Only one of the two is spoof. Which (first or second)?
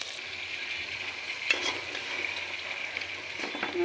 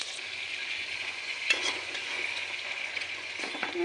second